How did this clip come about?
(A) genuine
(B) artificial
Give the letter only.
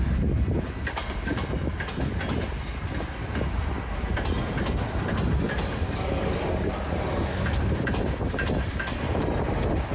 A